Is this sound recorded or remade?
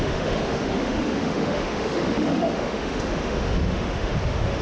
remade